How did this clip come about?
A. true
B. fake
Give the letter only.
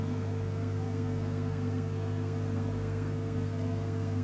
B